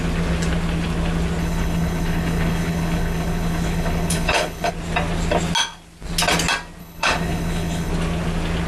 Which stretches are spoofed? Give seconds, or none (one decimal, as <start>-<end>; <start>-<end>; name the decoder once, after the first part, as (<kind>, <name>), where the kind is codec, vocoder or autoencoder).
1.4-4.7 (codec, HILCodec); 6.8-7.9